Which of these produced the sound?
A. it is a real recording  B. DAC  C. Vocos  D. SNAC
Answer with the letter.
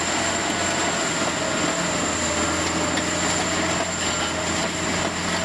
A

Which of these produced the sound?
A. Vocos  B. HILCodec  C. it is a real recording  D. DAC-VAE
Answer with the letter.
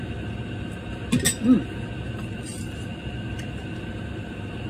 C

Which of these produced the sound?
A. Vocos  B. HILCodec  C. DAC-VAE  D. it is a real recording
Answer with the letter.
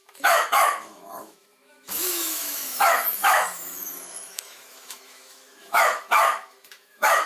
C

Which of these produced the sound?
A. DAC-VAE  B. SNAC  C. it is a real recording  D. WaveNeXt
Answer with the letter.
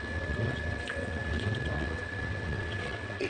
D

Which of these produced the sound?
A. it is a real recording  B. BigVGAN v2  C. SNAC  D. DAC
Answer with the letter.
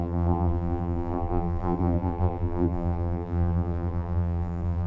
B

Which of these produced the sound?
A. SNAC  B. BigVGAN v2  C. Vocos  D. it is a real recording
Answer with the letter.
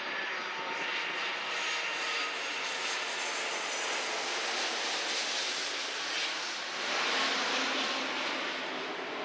D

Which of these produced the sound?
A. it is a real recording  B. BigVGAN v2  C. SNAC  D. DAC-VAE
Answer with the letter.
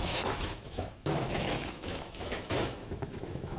D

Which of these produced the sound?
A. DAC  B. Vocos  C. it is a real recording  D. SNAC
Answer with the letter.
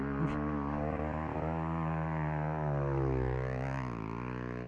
C